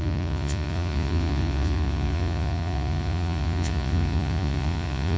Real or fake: fake